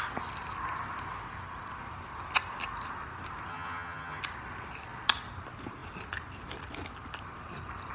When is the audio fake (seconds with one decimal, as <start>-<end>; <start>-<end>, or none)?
3.5-4.2